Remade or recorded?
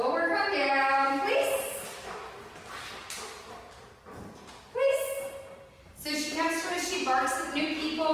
recorded